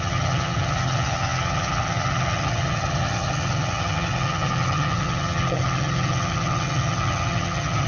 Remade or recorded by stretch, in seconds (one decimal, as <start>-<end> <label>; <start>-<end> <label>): 0.0-7.9 remade